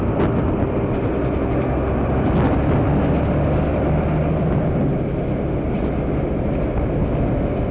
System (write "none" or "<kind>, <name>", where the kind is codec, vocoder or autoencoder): none